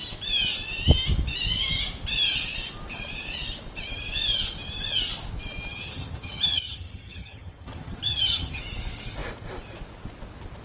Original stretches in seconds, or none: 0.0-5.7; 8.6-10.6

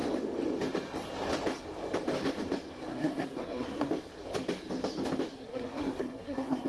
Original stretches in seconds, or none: 0.0-2.9; 3.9-5.3

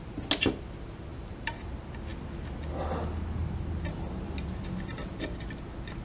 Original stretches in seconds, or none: 0.0-1.1; 1.6-6.0

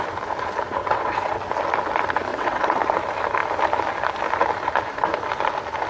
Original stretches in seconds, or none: 0.0-0.8; 1.4-2.3; 2.8-5.9

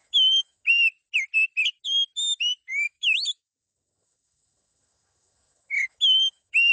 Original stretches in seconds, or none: 0.7-2.7